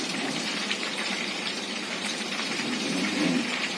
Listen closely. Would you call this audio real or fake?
fake